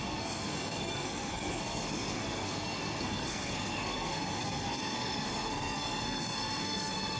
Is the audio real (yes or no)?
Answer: no